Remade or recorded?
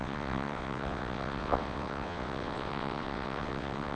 remade